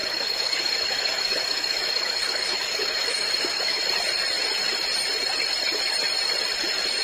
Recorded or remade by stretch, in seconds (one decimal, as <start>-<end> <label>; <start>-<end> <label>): 0.0-3.8 remade; 3.8-7.0 recorded